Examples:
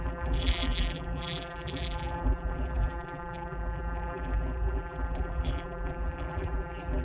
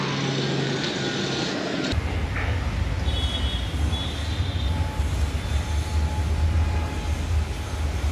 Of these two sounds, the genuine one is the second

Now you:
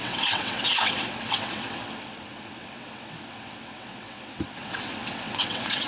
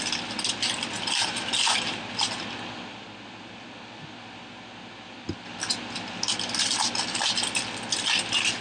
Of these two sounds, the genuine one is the second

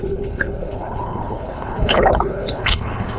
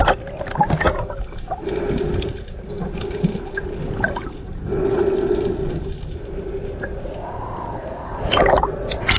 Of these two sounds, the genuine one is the second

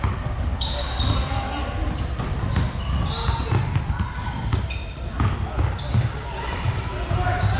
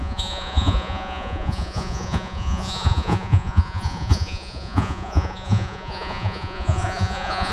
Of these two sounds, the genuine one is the first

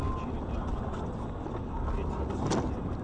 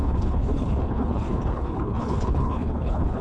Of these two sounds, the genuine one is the first